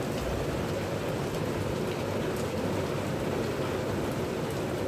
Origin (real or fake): real